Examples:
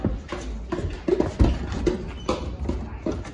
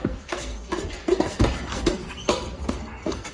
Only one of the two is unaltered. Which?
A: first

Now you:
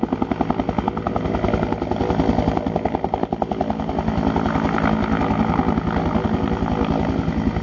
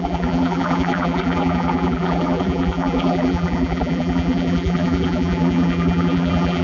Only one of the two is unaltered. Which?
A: first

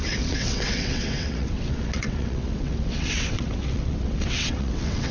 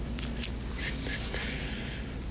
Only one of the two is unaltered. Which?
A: second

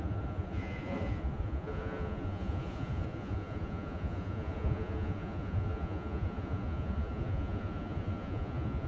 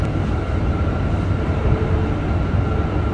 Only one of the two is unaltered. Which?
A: second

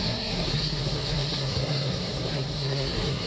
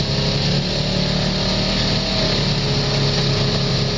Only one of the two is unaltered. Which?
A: second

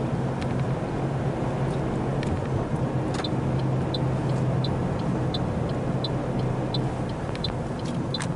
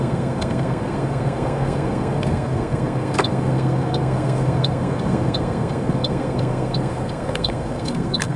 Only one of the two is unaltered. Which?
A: first